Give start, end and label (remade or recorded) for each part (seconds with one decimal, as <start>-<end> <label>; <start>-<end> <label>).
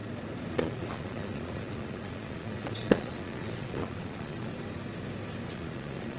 0.0-0.5 recorded; 0.5-4.5 remade; 4.5-5.5 recorded; 5.5-6.2 remade